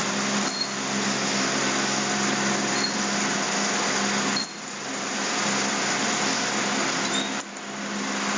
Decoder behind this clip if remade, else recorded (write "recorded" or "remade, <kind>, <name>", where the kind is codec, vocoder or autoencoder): recorded